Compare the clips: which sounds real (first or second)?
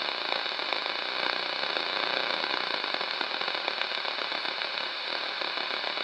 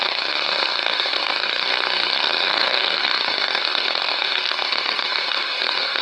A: first